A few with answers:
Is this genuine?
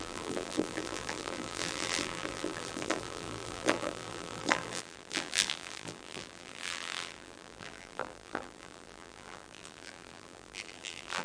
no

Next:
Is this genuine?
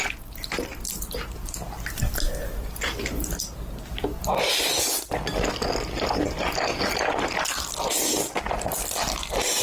yes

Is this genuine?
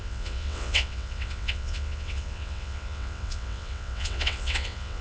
no